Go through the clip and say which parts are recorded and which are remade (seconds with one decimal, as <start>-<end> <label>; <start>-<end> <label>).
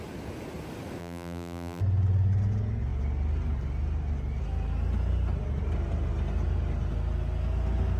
0.0-1.0 recorded; 1.0-1.8 remade; 1.8-8.0 recorded